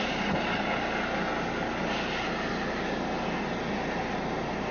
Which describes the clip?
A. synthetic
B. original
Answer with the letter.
B